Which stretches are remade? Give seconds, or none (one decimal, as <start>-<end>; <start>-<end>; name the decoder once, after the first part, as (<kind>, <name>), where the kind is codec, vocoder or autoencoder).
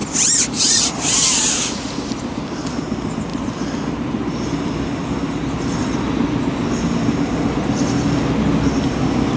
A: none